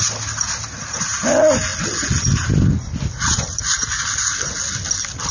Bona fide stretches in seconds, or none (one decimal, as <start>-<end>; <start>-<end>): 0.0-5.3